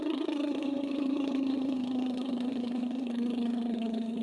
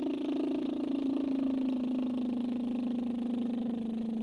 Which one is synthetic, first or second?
first